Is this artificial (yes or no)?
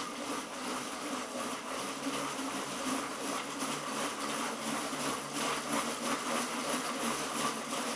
yes